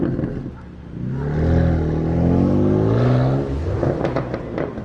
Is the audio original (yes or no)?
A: yes